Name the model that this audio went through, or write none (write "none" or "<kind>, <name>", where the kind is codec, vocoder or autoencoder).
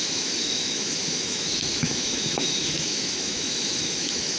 autoencoder, DAC-VAE